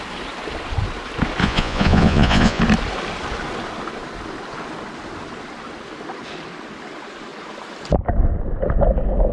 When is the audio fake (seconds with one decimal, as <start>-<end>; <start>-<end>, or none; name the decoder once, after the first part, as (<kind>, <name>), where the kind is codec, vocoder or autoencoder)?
1.4-2.6 (vocoder, Vocos)